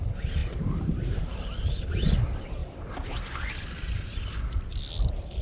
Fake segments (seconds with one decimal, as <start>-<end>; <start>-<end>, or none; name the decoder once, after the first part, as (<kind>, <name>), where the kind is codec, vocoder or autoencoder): none